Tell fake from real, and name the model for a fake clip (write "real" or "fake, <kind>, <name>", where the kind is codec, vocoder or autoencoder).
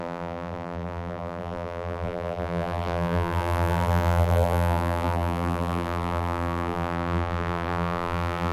fake, vocoder, BigVGAN v2